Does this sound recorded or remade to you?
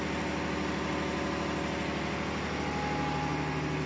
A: recorded